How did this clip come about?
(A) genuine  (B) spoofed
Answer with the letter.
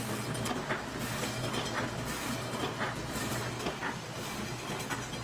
A